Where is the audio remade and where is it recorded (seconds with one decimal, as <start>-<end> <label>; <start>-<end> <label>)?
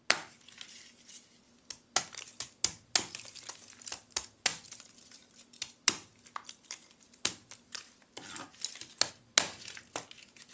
0.0-10.5 recorded